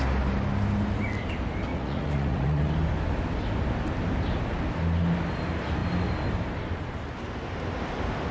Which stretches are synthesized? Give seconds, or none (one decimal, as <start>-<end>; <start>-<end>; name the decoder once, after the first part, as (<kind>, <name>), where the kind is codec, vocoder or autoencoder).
1.7-2.7 (vocoder, Vocos)